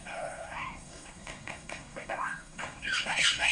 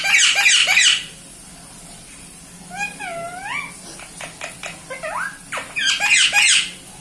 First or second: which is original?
second